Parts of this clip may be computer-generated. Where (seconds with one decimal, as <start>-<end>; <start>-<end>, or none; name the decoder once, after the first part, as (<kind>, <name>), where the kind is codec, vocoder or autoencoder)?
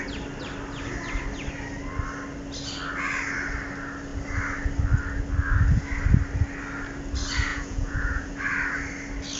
7.5-8.3 (vocoder, Vocos)